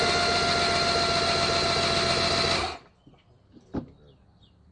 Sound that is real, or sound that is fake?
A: real